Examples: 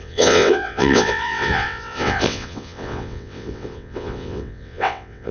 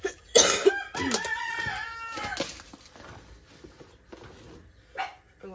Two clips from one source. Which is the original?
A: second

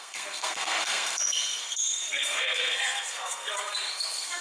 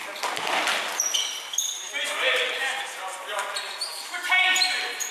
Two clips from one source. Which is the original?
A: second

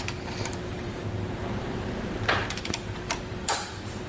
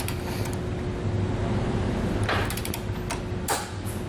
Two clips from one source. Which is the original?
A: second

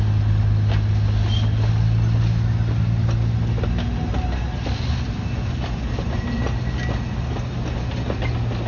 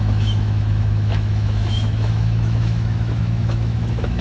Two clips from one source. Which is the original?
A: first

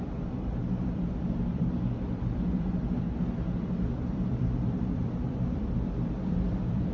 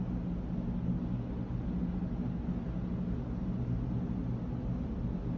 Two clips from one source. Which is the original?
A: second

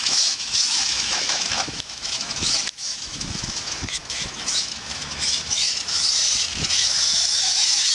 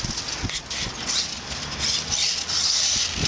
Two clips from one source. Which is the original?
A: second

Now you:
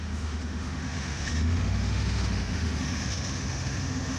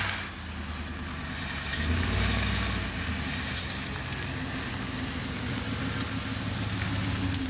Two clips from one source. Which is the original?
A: second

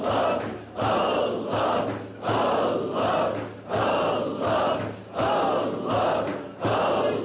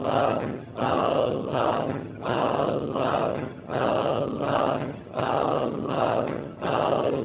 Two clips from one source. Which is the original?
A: first